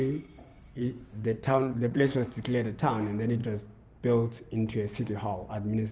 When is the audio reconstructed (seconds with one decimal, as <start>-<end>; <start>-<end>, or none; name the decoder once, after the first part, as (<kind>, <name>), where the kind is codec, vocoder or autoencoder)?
0.5-2.3 (vocoder, WaveNeXt)